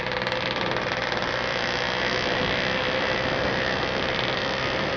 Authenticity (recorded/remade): recorded